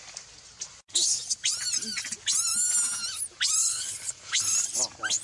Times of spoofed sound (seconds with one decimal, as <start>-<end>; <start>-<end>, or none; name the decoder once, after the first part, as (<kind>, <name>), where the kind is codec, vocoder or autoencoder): 3.6-4.4 (codec, HILCodec)

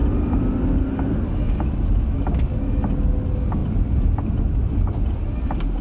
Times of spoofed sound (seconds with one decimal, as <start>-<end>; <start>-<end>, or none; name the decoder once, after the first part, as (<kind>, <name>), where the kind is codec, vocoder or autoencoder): none

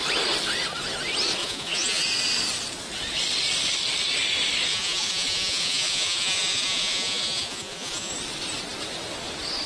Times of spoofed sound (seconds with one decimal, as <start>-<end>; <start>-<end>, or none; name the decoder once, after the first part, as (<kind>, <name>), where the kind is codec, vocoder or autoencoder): 1.4-2.0 (vocoder, Vocos); 4.7-8.1

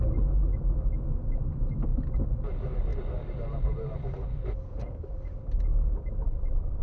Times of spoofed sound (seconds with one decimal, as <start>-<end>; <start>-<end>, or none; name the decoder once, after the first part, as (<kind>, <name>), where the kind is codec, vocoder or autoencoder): 5.7-6.8 (vocoder, BigVGAN v2)